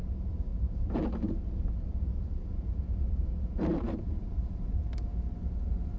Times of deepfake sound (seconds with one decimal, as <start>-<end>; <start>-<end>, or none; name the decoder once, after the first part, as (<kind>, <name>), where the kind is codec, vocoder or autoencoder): 0.0-5.1 (vocoder, BigVGAN v2)